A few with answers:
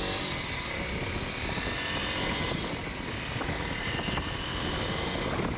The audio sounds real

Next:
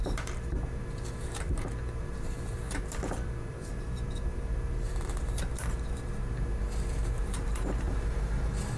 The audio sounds fake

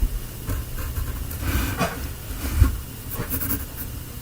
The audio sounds real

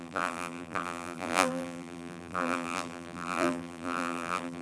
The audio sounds fake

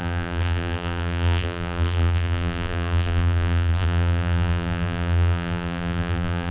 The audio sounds fake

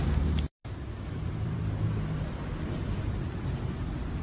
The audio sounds fake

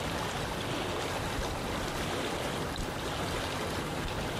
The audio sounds real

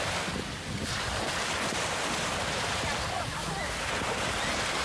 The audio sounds real